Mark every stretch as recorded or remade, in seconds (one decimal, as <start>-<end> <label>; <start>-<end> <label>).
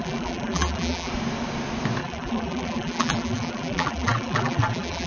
0.0-1.1 remade; 1.1-2.0 recorded; 2.0-5.1 remade